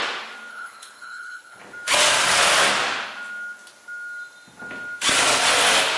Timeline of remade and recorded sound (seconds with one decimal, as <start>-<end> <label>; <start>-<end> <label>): 0.0-0.5 recorded; 0.5-1.6 remade; 1.6-6.0 recorded